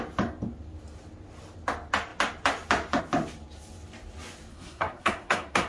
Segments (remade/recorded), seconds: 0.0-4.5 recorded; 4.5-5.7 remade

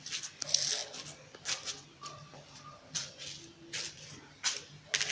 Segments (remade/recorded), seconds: 0.0-5.1 recorded

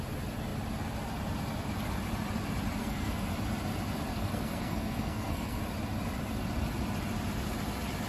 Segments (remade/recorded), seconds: 0.0-2.8 recorded; 2.8-3.3 remade; 3.3-4.1 recorded; 4.1-5.6 remade; 5.6-8.1 recorded

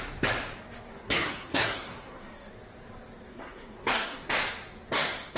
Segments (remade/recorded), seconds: 0.0-0.9 recorded; 0.9-2.5 remade; 2.5-3.3 recorded; 3.3-4.3 remade; 4.3-5.4 recorded

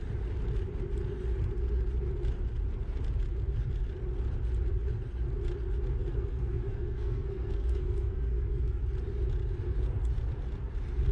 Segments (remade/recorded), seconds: 0.0-6.1 recorded; 6.1-8.8 remade; 8.8-11.1 recorded